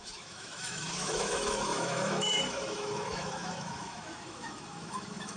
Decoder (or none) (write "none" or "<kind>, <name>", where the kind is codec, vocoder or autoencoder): autoencoder, DAC-VAE